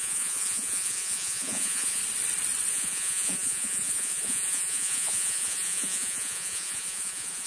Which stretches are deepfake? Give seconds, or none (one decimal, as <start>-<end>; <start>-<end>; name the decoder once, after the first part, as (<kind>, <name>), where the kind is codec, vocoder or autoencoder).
0.0-2.0 (vocoder, Vocos); 2.7-7.5